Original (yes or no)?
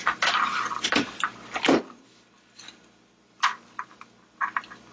yes